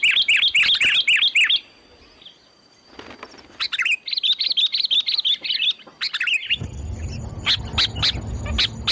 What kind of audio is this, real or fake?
real